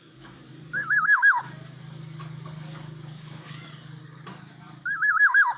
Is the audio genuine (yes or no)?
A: no